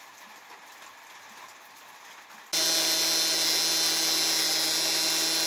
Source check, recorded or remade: recorded